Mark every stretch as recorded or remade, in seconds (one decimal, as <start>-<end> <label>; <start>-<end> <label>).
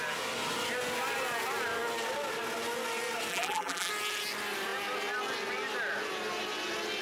0.0-3.3 recorded; 3.3-3.9 remade; 3.9-7.0 recorded